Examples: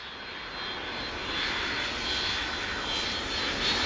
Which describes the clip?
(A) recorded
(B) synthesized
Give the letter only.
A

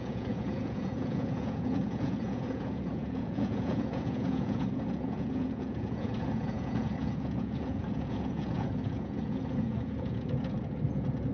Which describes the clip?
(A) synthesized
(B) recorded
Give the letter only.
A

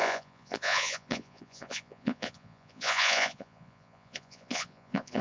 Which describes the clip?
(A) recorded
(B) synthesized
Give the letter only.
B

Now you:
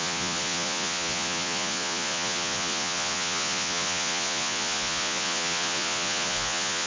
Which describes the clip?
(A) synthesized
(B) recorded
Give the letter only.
A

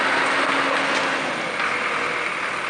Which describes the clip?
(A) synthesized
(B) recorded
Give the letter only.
B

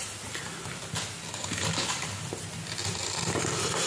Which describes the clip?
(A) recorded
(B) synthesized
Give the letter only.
A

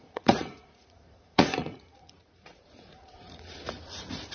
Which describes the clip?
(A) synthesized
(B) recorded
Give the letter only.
A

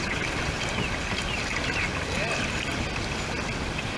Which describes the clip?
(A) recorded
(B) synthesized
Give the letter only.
A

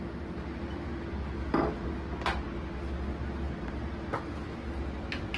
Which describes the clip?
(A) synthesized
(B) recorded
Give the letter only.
B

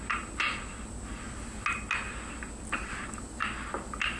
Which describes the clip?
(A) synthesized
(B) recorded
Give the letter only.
B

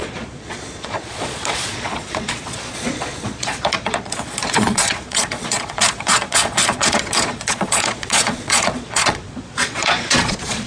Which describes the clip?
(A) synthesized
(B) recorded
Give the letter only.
A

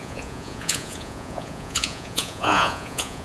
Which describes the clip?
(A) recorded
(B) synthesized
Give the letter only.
B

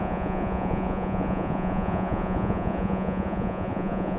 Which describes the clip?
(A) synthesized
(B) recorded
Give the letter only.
A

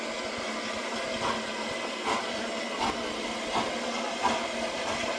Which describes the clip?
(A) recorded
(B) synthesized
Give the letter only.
A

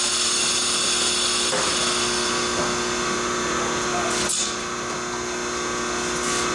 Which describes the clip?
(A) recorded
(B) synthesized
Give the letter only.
A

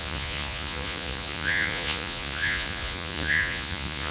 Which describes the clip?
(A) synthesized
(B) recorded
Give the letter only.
A